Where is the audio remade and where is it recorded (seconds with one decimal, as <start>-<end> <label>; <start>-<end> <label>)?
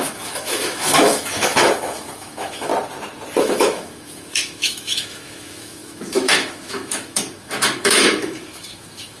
0.0-2.7 remade; 2.7-3.4 recorded; 3.4-9.2 remade